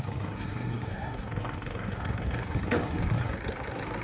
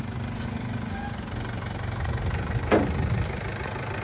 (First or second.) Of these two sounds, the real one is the second